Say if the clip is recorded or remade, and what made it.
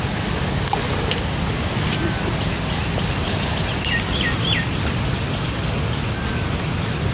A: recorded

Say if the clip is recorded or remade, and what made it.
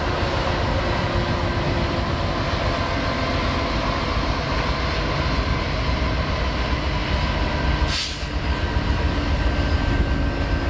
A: recorded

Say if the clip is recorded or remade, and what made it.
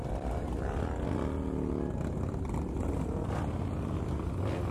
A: recorded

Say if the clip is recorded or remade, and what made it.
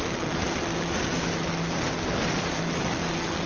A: recorded